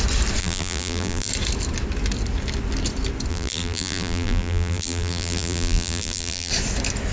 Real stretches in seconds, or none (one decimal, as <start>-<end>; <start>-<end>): 0.0-0.4; 1.3-3.3; 6.5-7.1